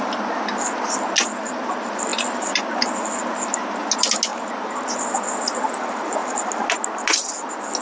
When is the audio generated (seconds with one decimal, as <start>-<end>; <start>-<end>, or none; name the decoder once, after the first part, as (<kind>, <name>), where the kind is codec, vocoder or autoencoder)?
none